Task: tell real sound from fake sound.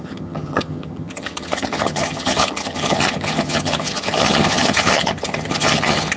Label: fake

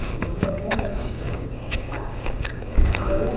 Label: fake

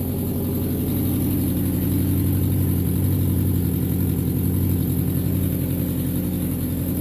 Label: real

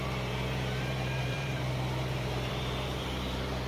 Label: fake